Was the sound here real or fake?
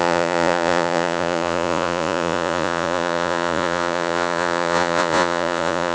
fake